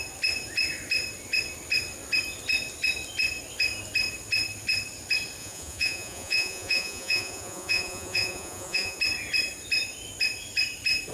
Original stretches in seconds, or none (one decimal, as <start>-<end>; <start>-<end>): 0.0-5.4; 9.0-11.1